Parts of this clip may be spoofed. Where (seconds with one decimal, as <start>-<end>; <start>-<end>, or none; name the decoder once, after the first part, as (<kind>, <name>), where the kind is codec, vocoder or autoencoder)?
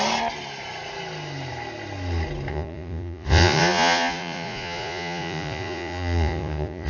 2.5-6.9 (vocoder, Vocos)